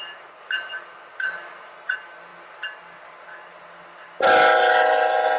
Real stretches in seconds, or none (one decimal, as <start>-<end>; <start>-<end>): 0.0-5.4